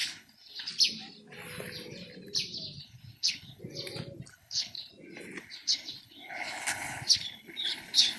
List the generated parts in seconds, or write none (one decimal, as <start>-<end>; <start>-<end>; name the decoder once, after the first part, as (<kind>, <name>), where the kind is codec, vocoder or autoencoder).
0.0-0.7 (codec, HILCodec); 2.8-3.6; 4.3-4.9; 5.4-8.2